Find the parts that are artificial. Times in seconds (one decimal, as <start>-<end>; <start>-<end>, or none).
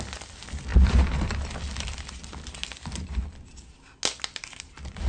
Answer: none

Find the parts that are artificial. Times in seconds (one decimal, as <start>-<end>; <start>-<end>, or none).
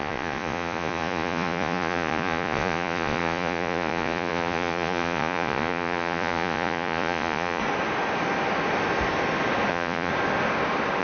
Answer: 0.0-7.6; 9.7-10.1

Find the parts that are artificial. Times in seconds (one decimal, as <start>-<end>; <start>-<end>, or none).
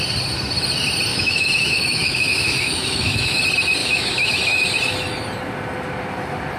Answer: 1.1-3.4; 3.8-4.4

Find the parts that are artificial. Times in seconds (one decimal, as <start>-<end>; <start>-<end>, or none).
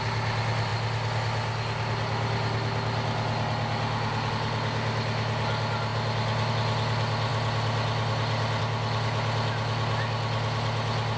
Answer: none